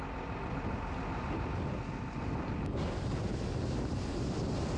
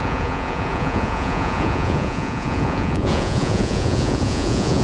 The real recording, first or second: first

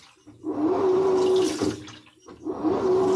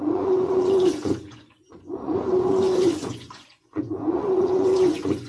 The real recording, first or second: first